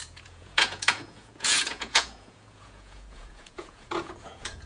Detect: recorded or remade remade